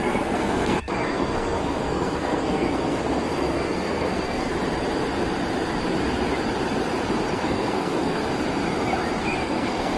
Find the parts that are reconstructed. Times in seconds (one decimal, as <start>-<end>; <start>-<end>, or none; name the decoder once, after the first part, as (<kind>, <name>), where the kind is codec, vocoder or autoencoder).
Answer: 0.0-4.5 (codec, SNAC); 7.3-8.2; 9.2-10.0